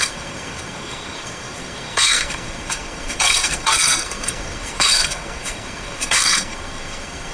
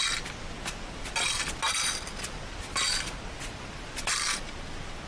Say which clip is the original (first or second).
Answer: second